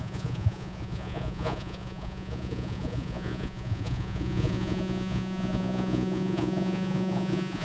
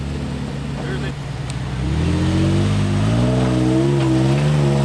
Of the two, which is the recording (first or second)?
second